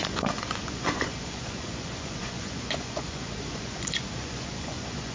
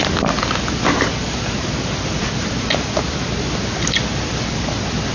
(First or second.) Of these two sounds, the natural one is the second